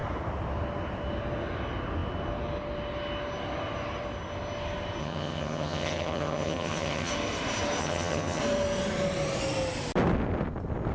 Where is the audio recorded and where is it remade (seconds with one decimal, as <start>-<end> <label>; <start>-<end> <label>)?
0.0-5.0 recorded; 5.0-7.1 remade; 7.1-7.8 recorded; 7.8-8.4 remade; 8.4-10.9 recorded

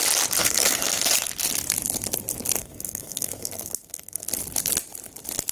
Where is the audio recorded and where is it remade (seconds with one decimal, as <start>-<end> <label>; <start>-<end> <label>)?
0.0-0.4 recorded; 0.4-1.3 remade; 1.3-2.6 recorded; 2.6-4.3 remade; 4.3-5.5 recorded

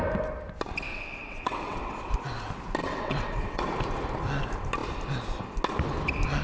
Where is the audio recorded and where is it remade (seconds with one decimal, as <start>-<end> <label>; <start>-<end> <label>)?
0.0-0.9 recorded; 0.9-2.0 remade; 2.0-2.8 recorded; 2.8-3.6 remade; 3.6-6.4 recorded

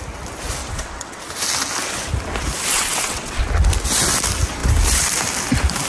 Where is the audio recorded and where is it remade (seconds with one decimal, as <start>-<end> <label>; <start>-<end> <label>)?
0.0-0.6 recorded; 0.6-1.2 remade; 1.2-2.7 recorded; 2.7-3.4 remade; 3.4-5.9 recorded

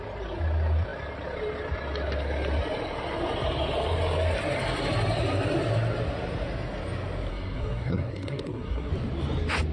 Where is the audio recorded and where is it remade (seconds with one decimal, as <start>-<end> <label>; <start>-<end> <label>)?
0.0-7.3 recorded; 7.3-8.9 remade; 8.9-9.7 recorded